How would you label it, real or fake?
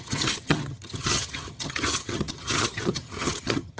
fake